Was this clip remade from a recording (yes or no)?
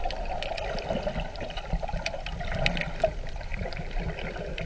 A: no